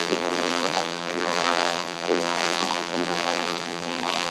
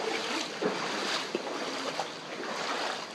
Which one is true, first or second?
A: second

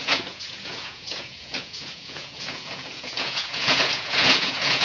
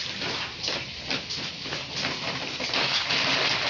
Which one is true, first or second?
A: second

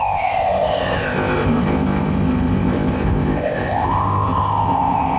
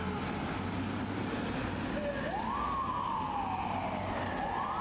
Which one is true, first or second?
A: second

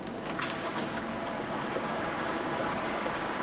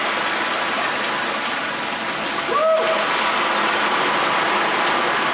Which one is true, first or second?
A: second